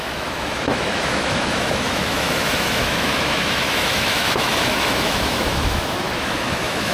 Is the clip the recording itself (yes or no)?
no